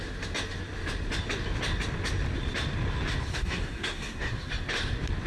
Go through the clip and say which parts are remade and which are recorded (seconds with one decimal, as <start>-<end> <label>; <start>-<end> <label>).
0.0-3.3 recorded; 3.3-4.5 remade; 4.5-5.3 recorded